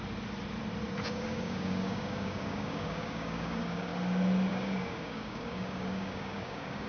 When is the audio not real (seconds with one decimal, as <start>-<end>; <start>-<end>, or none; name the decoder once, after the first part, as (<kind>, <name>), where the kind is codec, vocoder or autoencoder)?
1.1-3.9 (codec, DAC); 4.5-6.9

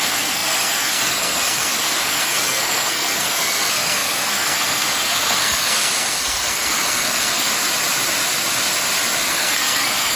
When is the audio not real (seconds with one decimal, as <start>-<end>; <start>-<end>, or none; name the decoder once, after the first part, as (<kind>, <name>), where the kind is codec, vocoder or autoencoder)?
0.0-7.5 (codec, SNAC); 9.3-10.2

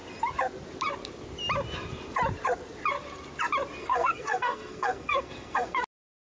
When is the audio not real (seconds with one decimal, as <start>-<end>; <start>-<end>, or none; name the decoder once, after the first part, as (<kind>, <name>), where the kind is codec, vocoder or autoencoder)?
3.8-5.8 (codec, SNAC)